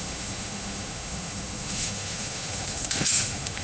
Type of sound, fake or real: fake